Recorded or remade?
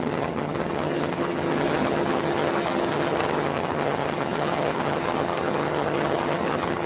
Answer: remade